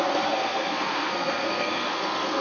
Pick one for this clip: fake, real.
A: fake